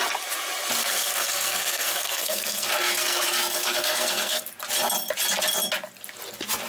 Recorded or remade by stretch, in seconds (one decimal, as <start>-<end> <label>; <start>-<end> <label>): 0.0-0.8 recorded; 0.8-4.4 remade; 4.4-6.7 recorded

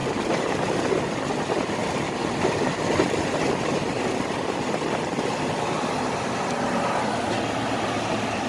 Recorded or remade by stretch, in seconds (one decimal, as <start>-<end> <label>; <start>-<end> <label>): 0.0-8.5 recorded

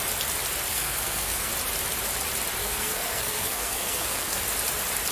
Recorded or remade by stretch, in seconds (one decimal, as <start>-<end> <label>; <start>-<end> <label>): 0.0-0.7 recorded; 0.7-1.5 remade; 1.5-2.6 recorded; 2.6-4.4 remade; 4.4-5.1 recorded

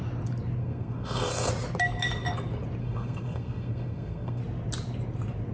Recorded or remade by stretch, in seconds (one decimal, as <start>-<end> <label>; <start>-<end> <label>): 0.0-0.6 recorded; 0.6-1.5 remade; 1.5-2.8 recorded; 2.8-4.4 remade; 4.4-5.5 recorded

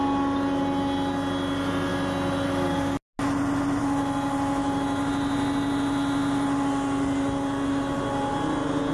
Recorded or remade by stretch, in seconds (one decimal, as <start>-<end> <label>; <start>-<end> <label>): 0.0-8.9 recorded